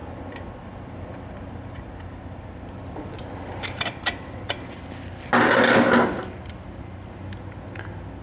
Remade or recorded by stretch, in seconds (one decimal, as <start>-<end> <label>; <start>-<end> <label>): 0.0-4.8 remade; 4.8-8.2 recorded